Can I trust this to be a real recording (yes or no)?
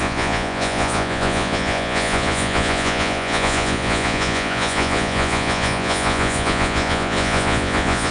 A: no